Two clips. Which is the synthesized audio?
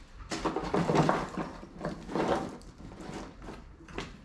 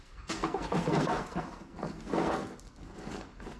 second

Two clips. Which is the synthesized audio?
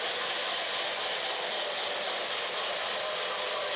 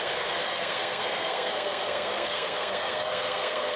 second